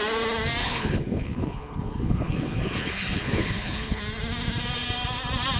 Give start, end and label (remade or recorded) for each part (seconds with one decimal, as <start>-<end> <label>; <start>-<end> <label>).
0.0-0.6 recorded; 0.6-4.0 remade; 4.0-5.6 recorded